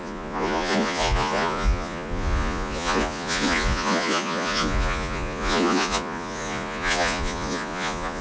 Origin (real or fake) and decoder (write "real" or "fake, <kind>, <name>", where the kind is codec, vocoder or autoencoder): fake, vocoder, Vocos